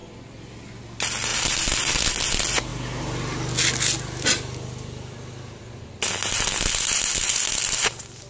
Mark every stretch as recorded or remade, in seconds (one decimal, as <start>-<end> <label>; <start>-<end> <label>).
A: 0.0-8.3 recorded